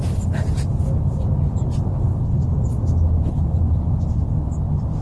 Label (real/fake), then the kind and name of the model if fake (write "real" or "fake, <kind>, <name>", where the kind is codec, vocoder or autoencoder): real